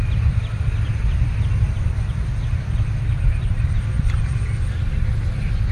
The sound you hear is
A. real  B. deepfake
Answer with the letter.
A